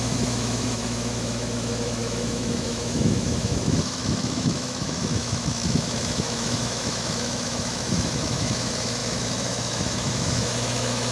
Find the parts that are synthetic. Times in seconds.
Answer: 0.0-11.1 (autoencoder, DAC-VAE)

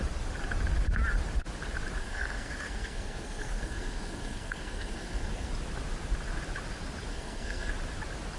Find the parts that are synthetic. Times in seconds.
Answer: 2.0-5.5 (codec, SNAC); 7.1-7.7

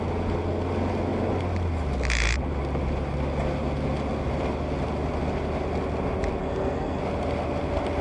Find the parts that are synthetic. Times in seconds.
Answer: 6.4-7.0 (codec, SNAC)

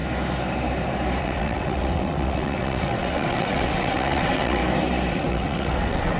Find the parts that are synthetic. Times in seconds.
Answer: 1.2-4.6 (vocoder, WaveNeXt); 5.1-6.2

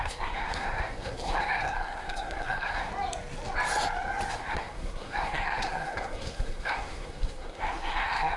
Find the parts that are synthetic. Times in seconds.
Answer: 0.0-2.9 (codec, SNAC); 4.3-8.4

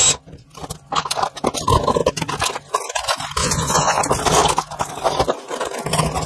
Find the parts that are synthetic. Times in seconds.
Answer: 3.4-4.0 (vocoder, Vocos)

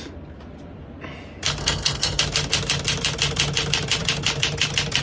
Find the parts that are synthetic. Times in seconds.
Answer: 1.6-2.2 (codec, SNAC)